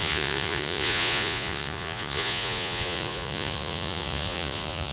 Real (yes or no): no